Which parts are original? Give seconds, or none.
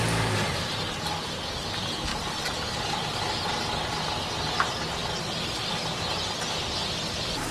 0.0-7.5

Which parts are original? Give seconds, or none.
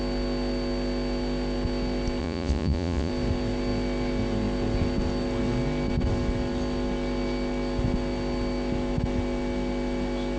0.0-2.2; 3.1-10.4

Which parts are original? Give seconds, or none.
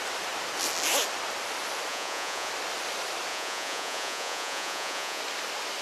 0.0-1.9; 2.5-3.3; 5.2-5.8